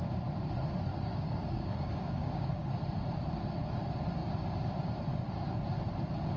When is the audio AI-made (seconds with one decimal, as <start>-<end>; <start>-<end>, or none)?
0.9-2.7